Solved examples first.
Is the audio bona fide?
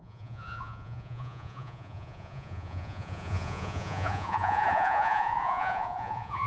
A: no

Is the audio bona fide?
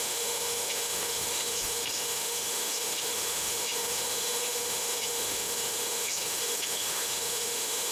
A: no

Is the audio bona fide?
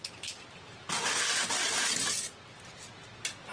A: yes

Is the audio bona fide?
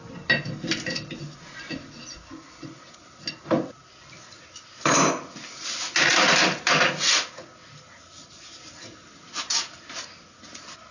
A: yes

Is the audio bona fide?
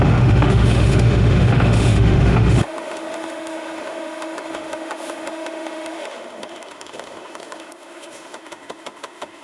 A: no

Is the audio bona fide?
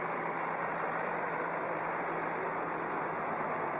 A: yes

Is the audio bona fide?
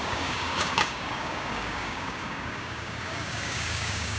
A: no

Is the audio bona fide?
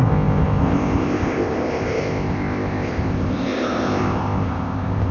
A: no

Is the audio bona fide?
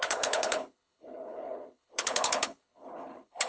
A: no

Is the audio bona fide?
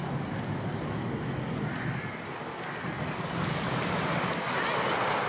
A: yes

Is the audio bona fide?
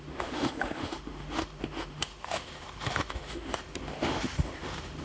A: no